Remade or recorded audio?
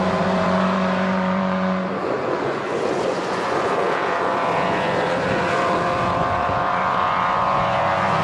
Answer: remade